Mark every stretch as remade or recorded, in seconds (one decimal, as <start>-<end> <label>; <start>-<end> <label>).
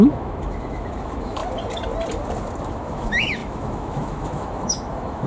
0.0-1.4 remade; 1.4-2.6 recorded; 2.6-5.3 remade